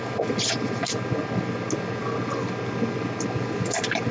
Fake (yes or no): no